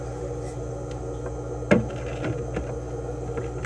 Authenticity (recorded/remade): recorded